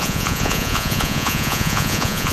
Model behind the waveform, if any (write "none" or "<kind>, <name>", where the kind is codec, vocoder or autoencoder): vocoder, Vocos